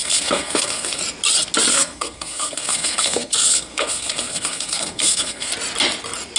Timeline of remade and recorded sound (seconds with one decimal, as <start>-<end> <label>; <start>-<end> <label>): 0.0-1.0 remade; 1.0-1.7 recorded; 1.7-5.5 remade; 5.5-6.4 recorded